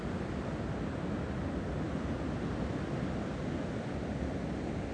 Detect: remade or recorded recorded